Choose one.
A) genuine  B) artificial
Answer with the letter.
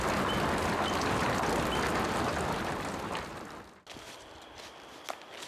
A